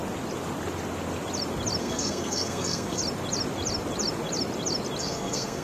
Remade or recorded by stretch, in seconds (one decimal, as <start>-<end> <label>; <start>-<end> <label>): 0.0-1.8 recorded; 1.8-3.0 remade; 3.0-5.0 recorded; 5.0-5.6 remade